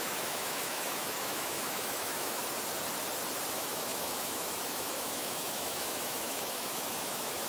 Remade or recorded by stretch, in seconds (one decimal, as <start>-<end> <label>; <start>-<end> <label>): 0.0-2.4 remade; 2.4-3.5 recorded; 3.5-7.5 remade